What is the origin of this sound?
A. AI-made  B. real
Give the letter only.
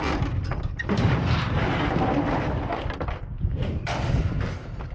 B